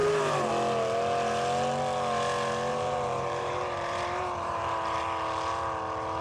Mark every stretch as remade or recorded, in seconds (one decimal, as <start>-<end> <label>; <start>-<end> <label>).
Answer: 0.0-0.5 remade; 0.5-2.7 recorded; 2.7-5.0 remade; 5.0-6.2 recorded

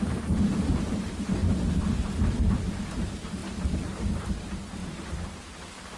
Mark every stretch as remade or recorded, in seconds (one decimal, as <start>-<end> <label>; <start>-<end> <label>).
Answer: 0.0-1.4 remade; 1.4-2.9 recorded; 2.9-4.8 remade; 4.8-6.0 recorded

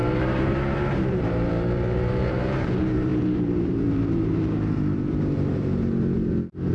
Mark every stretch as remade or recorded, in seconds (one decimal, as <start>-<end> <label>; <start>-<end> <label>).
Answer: 0.0-6.7 remade